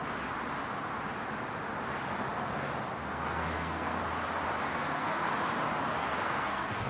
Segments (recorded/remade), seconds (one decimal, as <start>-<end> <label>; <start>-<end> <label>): 0.0-3.1 recorded; 3.1-4.0 remade; 4.0-4.7 recorded; 4.7-5.3 remade; 5.3-6.0 recorded; 6.0-6.9 remade